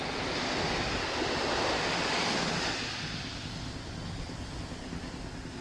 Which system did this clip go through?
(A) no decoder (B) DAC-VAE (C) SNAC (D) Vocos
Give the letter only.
A